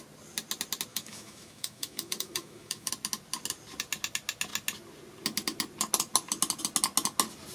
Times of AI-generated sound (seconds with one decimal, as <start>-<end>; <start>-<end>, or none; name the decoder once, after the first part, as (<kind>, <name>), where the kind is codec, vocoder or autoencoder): 0.9-2.9 (autoencoder, DAC-VAE)